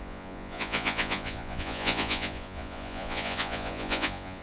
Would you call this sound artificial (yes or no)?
yes